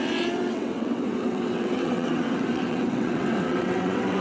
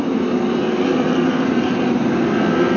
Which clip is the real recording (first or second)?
second